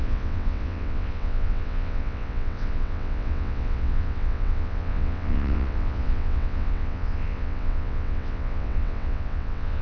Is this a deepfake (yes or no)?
yes